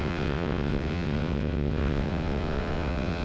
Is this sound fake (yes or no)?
yes